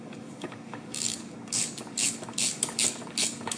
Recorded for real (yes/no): no